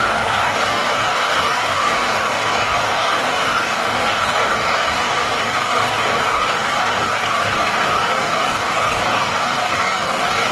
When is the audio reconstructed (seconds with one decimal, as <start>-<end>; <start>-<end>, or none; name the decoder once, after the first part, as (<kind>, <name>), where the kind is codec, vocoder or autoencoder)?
0.0-10.5 (codec, DAC)